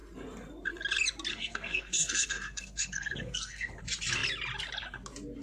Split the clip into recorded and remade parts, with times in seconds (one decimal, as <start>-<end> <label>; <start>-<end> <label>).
0.0-1.3 recorded; 1.3-3.8 remade; 3.8-5.4 recorded